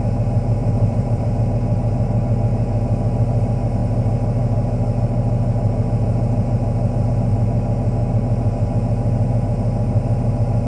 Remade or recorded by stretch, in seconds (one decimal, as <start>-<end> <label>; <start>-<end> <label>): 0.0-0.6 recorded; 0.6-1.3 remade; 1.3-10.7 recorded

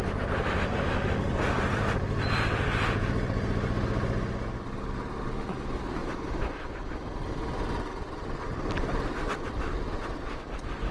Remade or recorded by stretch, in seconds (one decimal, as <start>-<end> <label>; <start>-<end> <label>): 0.0-6.0 recorded; 6.0-10.2 remade; 10.2-10.9 recorded

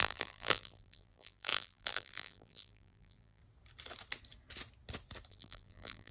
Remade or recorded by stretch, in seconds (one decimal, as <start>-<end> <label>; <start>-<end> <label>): 0.0-3.4 remade; 3.4-5.3 recorded; 5.3-6.1 remade

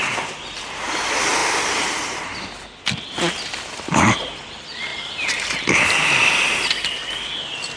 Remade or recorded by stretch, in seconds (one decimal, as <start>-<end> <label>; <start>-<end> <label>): 0.0-4.9 recorded; 4.9-5.8 remade; 5.8-7.8 recorded

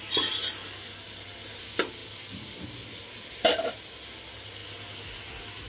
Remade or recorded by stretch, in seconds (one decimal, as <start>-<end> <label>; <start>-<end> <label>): 0.0-0.6 recorded; 0.6-1.6 remade; 1.6-5.7 recorded